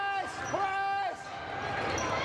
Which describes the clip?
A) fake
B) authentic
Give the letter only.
B